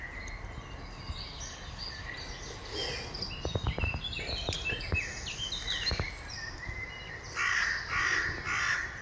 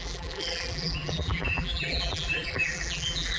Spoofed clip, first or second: second